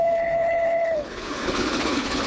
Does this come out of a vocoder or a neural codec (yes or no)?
yes